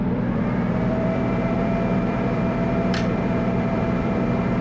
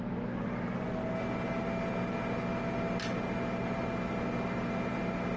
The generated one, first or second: first